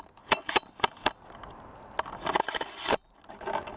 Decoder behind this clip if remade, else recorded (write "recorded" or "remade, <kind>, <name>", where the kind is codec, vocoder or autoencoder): recorded